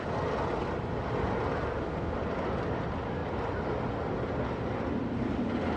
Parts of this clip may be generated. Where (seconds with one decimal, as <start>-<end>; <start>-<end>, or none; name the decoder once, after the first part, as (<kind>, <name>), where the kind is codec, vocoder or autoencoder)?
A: none